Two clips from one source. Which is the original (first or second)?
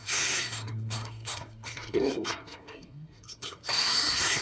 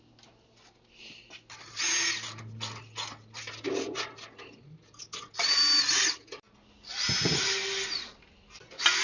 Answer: second